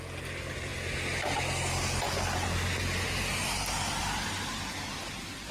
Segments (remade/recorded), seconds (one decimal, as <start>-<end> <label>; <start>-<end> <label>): 0.0-5.5 recorded